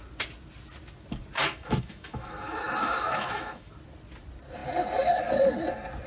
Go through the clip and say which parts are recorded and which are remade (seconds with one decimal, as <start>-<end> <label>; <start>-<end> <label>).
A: 0.0-1.4 recorded; 1.4-3.7 remade; 3.7-6.1 recorded